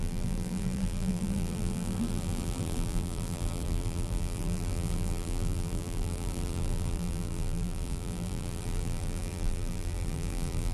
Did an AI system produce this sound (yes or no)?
yes